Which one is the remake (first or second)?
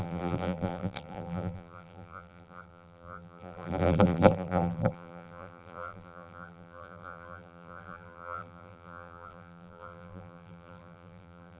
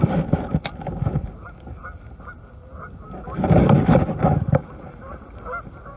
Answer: first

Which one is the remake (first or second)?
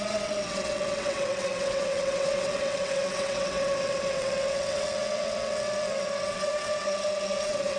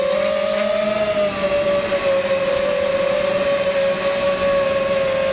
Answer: first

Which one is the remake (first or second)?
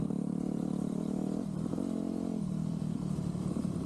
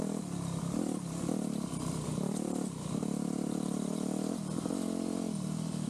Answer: first